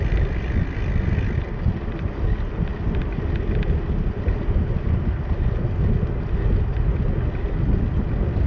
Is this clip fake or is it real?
real